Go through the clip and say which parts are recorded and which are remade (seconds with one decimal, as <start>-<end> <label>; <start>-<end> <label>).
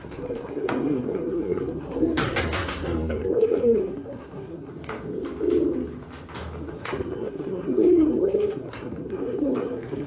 0.0-4.7 remade; 4.7-6.7 recorded; 6.7-10.1 remade